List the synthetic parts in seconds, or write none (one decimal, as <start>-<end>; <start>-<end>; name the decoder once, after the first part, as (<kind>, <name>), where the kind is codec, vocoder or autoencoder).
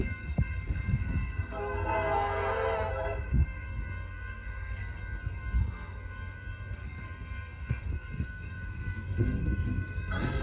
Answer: 0.0-10.4 (codec, SNAC)